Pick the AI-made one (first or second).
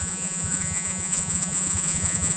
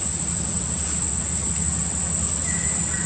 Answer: first